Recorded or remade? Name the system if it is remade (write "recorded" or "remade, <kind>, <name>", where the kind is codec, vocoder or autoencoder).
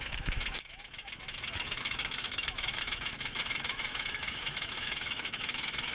remade, autoencoder, DAC-VAE